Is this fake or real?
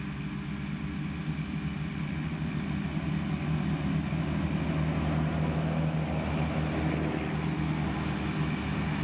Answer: real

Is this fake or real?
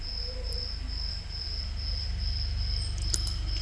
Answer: real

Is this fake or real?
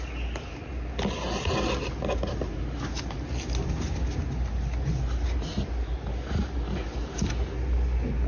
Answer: real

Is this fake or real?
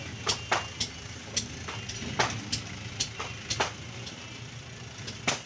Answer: real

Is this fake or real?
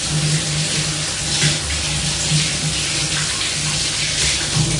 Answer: real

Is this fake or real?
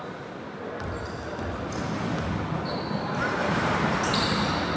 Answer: real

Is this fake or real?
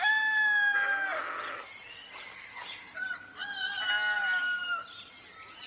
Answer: real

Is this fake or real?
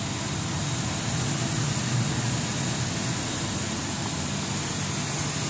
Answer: real